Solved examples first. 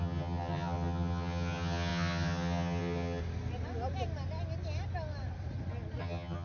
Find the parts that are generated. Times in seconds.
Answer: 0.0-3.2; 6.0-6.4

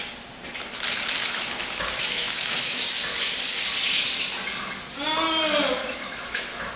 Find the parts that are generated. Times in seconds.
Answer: 1.2-2.8; 5.8-6.8

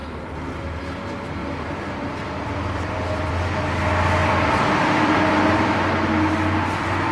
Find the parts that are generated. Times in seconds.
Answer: 0.0-0.8; 1.4-3.3; 4.2-5.9

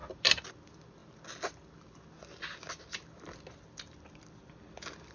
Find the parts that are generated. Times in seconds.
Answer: none

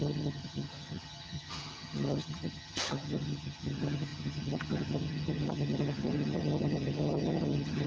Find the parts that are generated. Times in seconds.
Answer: 0.0-7.9